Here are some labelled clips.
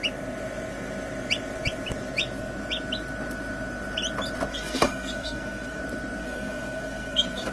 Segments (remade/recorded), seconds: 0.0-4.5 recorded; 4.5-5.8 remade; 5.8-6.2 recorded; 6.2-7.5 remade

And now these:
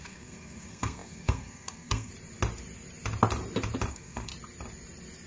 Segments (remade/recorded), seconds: 0.0-2.1 remade; 2.1-3.9 recorded; 3.9-4.3 remade; 4.3-5.3 recorded

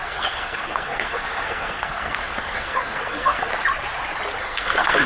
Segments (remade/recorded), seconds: 0.0-3.5 remade; 3.5-4.4 recorded; 4.4-5.1 remade